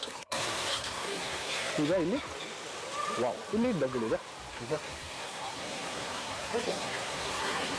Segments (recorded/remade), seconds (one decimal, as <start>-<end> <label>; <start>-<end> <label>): 0.0-1.7 remade; 1.7-4.5 recorded; 4.5-7.8 remade